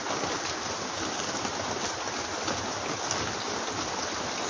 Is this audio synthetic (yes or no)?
no